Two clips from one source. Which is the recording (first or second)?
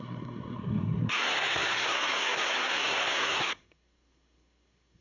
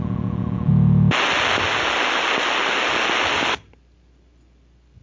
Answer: second